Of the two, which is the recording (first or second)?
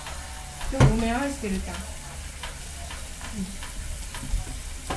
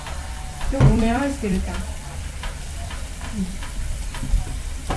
first